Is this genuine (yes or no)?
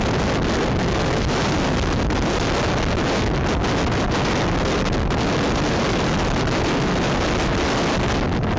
yes